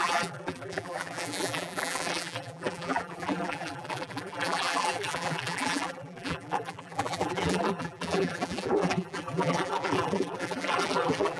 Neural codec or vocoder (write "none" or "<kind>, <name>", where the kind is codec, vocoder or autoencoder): vocoder, BigVGAN v2